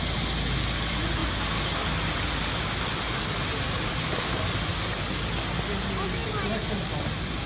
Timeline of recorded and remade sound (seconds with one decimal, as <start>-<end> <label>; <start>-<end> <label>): 0.0-7.5 recorded